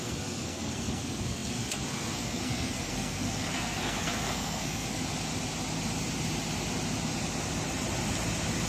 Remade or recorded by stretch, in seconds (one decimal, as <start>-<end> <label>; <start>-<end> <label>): 0.0-5.0 remade; 5.0-8.7 recorded